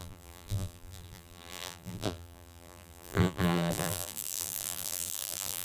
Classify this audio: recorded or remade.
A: remade